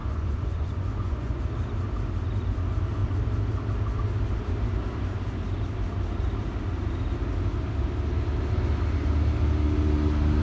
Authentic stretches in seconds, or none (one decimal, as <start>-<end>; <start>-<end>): 1.4-10.4